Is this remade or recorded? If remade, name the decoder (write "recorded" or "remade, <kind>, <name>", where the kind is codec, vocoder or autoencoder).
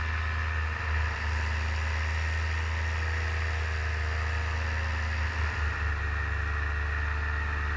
recorded